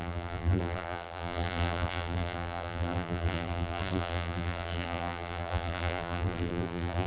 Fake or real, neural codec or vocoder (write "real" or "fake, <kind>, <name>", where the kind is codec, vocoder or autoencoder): fake, vocoder, BigVGAN v2